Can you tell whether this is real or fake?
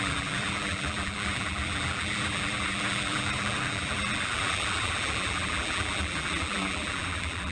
fake